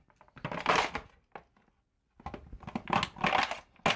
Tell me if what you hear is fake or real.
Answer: real